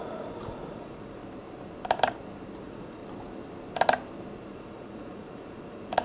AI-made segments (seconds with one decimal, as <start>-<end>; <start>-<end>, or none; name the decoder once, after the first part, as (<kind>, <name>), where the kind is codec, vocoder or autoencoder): 0.0-1.2 (vocoder, Vocos); 2.6-3.0; 4.4-6.0